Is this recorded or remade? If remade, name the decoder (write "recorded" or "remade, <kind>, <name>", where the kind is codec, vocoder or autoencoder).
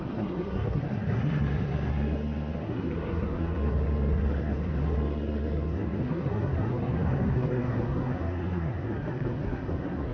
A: remade, codec, SNAC